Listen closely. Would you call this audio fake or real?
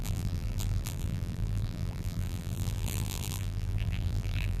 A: fake